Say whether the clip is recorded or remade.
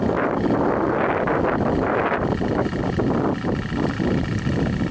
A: recorded